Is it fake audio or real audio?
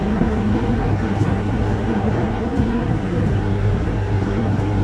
fake